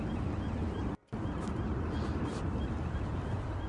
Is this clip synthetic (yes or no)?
no